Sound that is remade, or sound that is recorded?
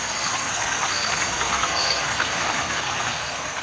remade